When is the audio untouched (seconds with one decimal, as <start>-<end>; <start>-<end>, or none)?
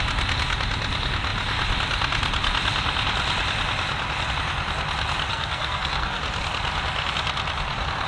0.0-5.3; 6.2-8.1